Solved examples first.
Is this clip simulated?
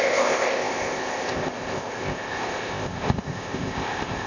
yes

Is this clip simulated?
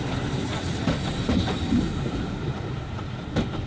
no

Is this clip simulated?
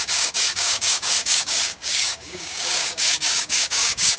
yes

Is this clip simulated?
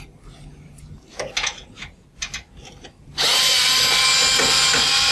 no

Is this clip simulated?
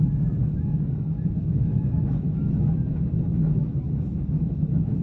yes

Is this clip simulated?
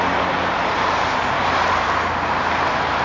no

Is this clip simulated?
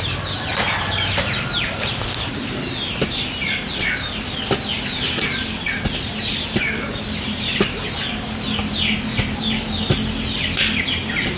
no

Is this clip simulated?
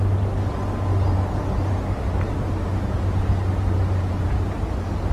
no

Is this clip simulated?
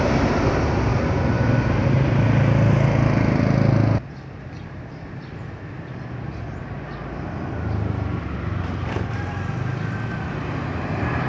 no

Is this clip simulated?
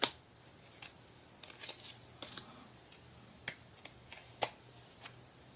no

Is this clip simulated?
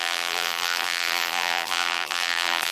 yes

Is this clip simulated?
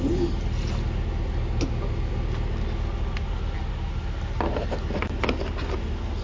no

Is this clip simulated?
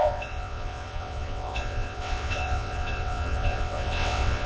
yes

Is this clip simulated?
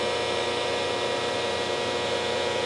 no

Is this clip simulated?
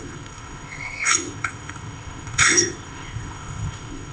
yes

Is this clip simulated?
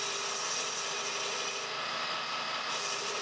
no